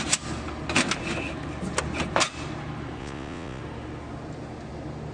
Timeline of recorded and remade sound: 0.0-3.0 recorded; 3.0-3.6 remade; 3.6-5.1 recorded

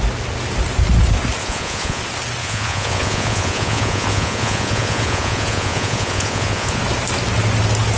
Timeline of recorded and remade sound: 0.0-1.4 recorded; 1.4-2.0 remade; 2.0-2.4 recorded; 2.4-6.8 remade; 6.8-8.0 recorded

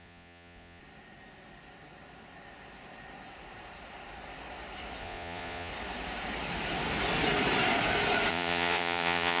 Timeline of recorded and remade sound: 0.0-0.8 remade; 0.8-5.0 recorded; 5.0-5.7 remade; 5.7-8.3 recorded; 8.3-9.4 remade

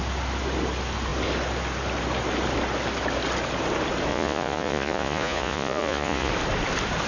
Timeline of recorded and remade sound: 0.0-4.1 recorded; 4.1-6.3 remade; 6.3-7.1 recorded

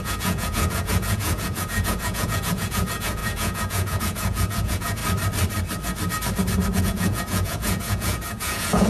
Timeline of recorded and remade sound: 0.0-5.0 remade; 5.0-6.8 recorded; 6.8-8.9 remade

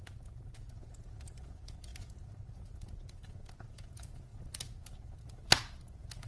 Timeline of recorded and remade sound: 0.0-1.9 remade; 1.9-2.5 recorded; 2.5-6.3 remade